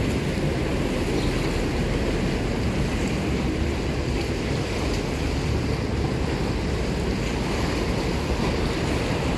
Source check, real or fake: real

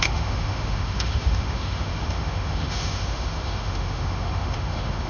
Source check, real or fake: fake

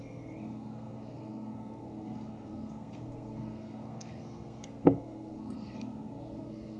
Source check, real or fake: fake